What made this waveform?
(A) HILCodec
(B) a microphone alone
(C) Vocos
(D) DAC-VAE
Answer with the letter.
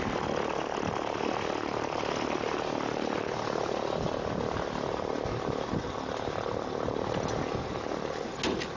B